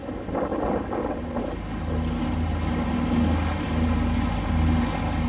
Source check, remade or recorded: recorded